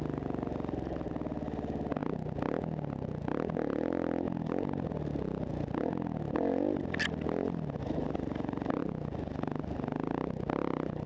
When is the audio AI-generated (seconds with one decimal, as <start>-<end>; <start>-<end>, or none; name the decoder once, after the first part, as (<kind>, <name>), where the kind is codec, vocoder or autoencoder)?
none